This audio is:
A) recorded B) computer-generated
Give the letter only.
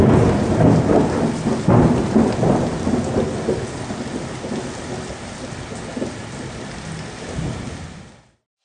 A